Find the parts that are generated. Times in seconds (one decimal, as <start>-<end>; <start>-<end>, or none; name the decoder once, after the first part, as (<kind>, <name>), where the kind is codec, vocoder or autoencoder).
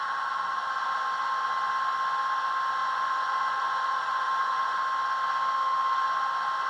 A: 2.8-4.8 (vocoder, Vocos)